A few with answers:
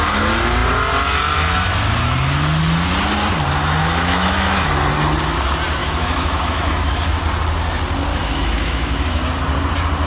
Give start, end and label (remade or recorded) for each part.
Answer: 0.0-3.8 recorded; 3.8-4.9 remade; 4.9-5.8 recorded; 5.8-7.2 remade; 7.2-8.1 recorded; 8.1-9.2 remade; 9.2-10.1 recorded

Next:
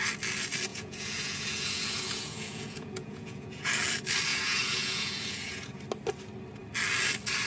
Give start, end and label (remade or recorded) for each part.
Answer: 0.0-0.7 recorded; 0.7-3.7 remade; 3.7-4.3 recorded; 4.3-5.7 remade; 5.7-7.5 recorded

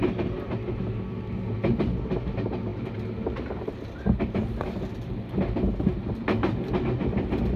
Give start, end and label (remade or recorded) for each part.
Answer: 0.0-7.6 recorded

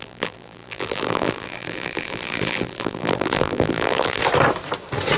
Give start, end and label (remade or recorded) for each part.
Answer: 0.0-4.2 remade; 4.2-5.2 recorded

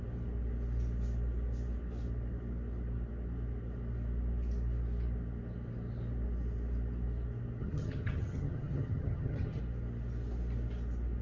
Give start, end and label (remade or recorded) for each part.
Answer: 0.0-7.6 recorded; 7.6-9.6 remade; 9.6-11.2 recorded

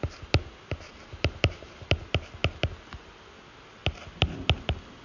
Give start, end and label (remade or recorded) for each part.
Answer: 0.0-1.1 recorded; 1.1-1.9 remade; 1.9-5.0 recorded

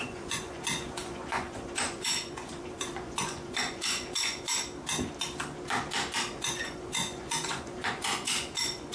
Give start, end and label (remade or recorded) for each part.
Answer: 0.0-4.5 remade; 4.5-6.3 recorded; 6.3-8.9 remade

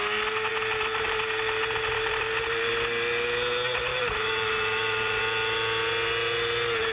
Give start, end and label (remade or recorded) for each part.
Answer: 0.0-0.5 recorded; 0.5-2.7 remade; 2.7-3.9 recorded; 3.9-5.2 remade; 5.2-6.9 recorded